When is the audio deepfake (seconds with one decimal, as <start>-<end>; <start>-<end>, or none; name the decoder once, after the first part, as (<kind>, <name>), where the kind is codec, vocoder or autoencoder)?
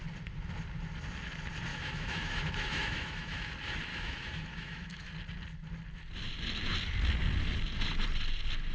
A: 1.7-3.5 (autoencoder, DAC-VAE); 3.9-5.1